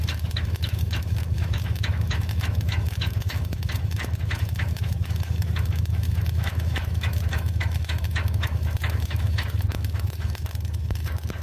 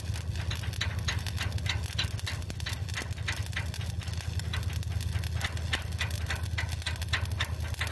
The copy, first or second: first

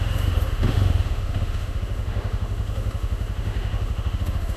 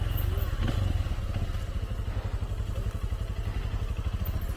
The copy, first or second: first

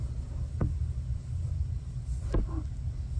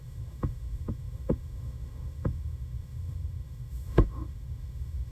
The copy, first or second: second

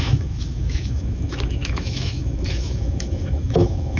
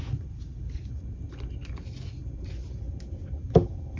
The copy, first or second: first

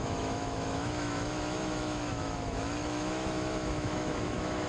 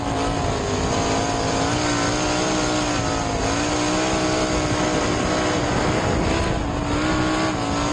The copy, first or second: first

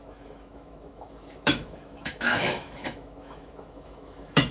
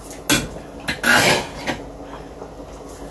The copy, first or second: first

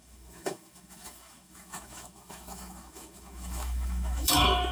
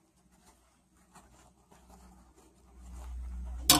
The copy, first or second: first